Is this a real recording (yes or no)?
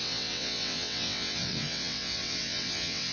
no